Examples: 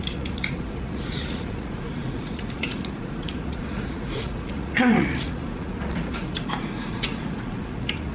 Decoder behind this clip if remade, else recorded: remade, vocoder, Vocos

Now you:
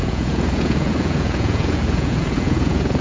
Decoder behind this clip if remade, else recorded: remade, vocoder, Vocos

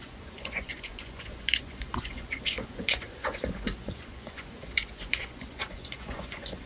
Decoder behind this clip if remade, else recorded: remade, vocoder, Vocos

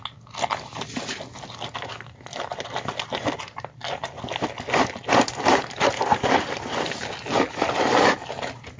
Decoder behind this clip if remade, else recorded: recorded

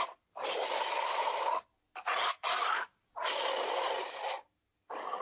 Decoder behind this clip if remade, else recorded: recorded